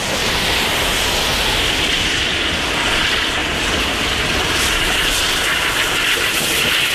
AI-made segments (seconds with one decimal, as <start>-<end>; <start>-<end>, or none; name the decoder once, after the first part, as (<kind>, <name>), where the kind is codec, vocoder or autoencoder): 3.4-6.4 (vocoder, BigVGAN v2)